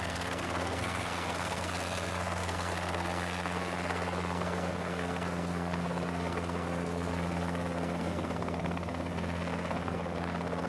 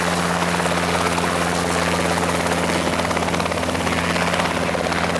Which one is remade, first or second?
first